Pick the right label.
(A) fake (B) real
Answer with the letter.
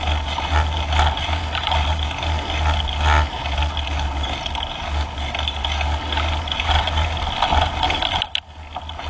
B